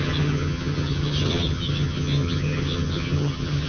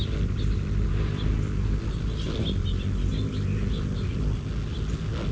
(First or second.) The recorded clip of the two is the second